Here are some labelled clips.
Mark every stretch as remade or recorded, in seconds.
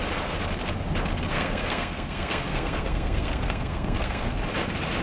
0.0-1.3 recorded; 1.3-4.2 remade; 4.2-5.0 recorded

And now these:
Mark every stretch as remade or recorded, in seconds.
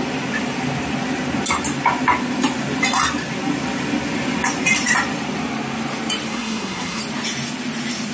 0.0-6.3 recorded; 6.3-7.0 remade; 7.0-8.1 recorded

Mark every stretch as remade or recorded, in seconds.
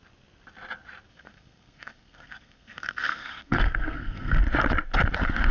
0.0-1.1 recorded; 1.1-4.4 remade; 4.4-5.5 recorded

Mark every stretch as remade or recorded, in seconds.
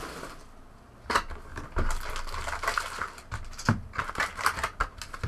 0.0-5.3 recorded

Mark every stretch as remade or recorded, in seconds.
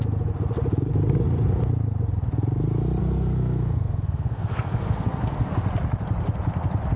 0.0-3.0 recorded; 3.0-5.5 remade; 5.5-7.0 recorded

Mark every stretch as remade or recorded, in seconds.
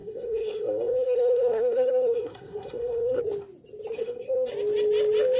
0.0-3.2 remade; 3.2-4.0 recorded; 4.0-4.5 remade; 4.5-5.4 recorded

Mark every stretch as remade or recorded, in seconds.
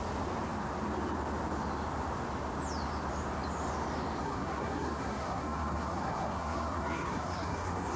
0.0-4.2 recorded; 4.2-8.0 remade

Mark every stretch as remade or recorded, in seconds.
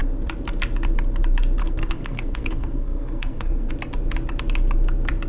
0.0-1.6 recorded; 1.6-3.7 remade; 3.7-5.3 recorded